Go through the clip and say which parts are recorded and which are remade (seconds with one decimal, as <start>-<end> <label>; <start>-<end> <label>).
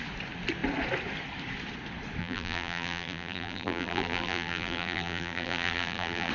0.0-2.2 recorded; 2.2-6.3 remade